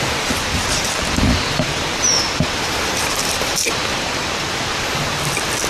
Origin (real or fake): fake